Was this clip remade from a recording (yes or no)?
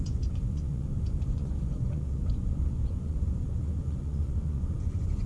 yes